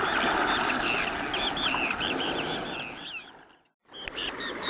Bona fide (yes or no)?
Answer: yes